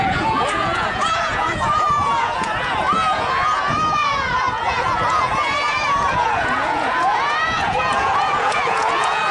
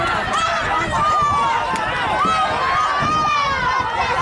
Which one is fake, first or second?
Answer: first